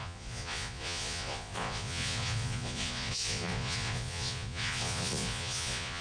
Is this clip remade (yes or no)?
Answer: yes